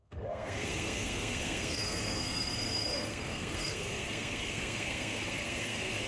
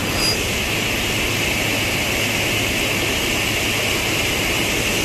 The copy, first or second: first